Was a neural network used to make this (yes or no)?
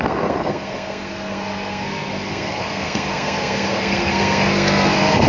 yes